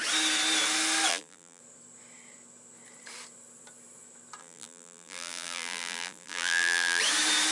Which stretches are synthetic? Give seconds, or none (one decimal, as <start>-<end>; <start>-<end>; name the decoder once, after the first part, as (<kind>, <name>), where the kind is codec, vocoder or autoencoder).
1.1-1.6 (vocoder, BigVGAN v2); 4.4-7.0